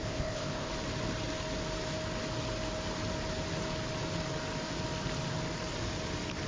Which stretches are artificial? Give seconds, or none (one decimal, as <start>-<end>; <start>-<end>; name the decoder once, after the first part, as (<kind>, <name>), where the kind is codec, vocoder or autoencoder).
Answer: 0.0-0.7 (codec, ZipCodec)